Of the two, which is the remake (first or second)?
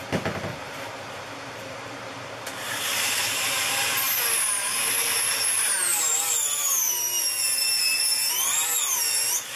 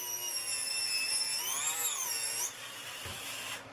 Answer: first